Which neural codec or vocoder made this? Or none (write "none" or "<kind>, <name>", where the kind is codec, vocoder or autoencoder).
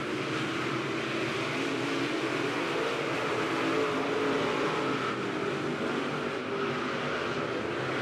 none